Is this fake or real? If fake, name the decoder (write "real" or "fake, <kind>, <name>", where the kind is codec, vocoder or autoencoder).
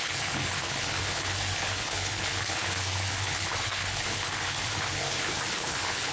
fake, codec, HILCodec